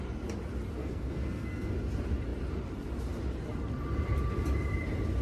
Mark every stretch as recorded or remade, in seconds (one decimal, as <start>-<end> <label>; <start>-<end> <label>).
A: 0.0-0.8 recorded; 0.8-1.7 remade; 1.7-5.2 recorded